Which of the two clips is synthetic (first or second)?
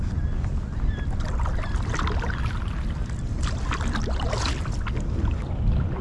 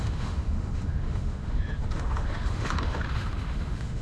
second